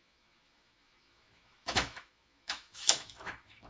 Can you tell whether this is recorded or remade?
remade